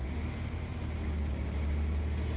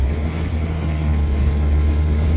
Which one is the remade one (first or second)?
second